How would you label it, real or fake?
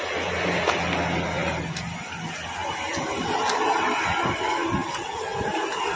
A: real